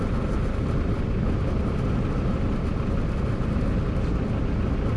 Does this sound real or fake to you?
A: real